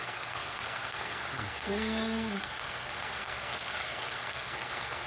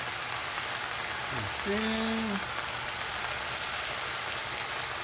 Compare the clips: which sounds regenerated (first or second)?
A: first